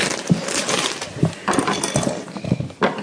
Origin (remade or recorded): recorded